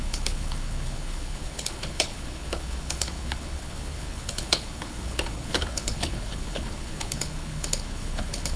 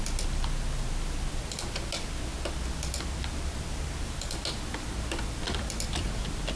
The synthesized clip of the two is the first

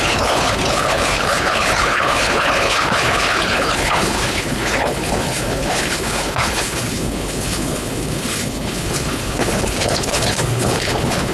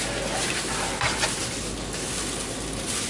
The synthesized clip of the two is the first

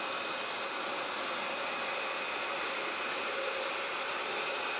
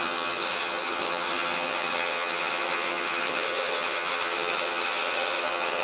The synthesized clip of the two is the second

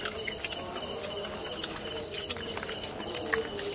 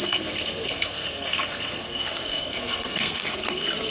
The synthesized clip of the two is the second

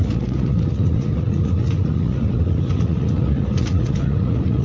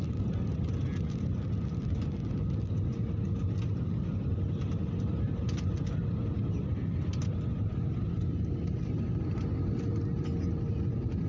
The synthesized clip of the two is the first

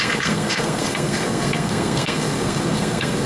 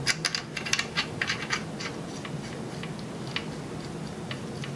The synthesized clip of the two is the first